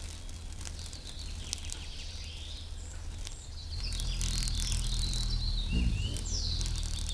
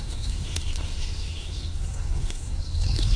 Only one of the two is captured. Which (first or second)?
first